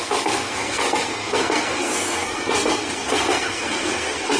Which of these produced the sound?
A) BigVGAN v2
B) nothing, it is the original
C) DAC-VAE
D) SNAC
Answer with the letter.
D